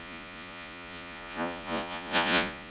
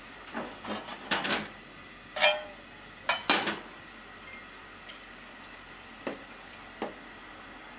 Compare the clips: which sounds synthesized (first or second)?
first